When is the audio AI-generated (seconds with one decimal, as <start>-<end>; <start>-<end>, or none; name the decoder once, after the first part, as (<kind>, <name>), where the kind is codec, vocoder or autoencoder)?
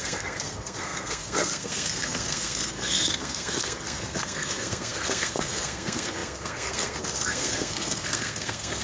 0.0-8.8 (codec, SNAC)